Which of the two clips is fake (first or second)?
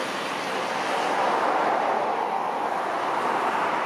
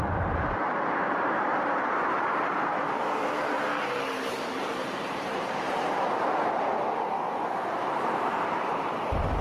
second